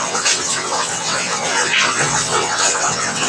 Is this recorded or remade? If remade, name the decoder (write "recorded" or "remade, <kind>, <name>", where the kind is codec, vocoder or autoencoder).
remade, vocoder, WaveNeXt